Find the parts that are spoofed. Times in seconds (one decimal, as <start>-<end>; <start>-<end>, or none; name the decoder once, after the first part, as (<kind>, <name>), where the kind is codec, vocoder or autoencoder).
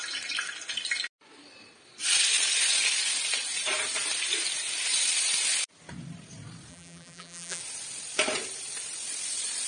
6.7-7.6 (vocoder, BigVGAN v2)